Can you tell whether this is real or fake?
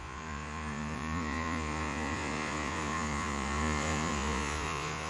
fake